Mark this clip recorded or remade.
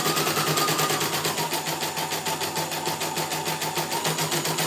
recorded